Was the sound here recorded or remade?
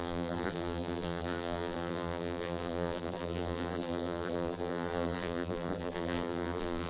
remade